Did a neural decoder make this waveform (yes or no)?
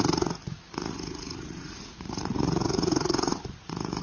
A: yes